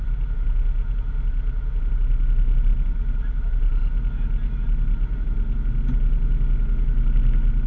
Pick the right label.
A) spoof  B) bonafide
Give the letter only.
B